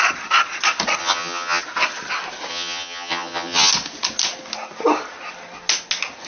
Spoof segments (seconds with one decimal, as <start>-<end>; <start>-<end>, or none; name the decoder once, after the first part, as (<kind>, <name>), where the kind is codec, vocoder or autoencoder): 1.0-1.6 (vocoder, HiFi-GAN); 2.5-3.7